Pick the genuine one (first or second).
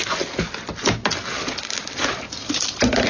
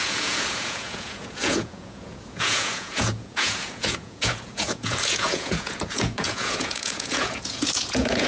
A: first